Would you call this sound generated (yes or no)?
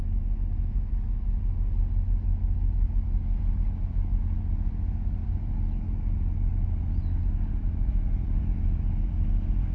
no